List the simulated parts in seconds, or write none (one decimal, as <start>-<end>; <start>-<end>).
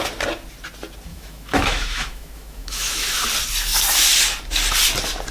1.1-3.2